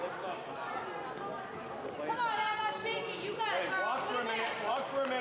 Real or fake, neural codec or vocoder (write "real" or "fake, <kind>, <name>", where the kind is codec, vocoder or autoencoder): real